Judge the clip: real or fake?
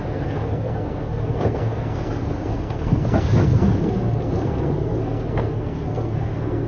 fake